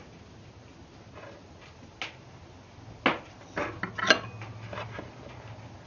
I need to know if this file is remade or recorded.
recorded